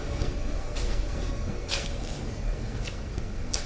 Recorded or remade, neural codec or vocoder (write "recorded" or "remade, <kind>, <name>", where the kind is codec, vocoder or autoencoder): remade, codec, SNAC